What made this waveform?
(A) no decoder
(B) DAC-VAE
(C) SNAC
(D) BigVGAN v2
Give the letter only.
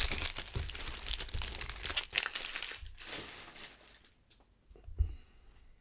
A